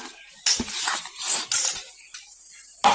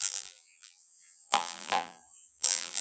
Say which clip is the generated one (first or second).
second